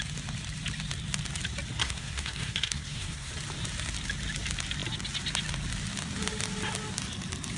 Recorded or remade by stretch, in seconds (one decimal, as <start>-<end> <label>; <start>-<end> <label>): 0.0-1.8 recorded; 1.8-3.3 remade; 3.3-7.6 recorded